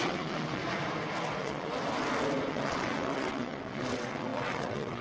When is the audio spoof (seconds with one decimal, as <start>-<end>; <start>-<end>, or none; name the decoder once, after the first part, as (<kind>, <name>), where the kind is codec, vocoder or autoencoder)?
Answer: 0.0-0.6 (vocoder, WaveNeXt); 1.4-1.8; 2.5-5.0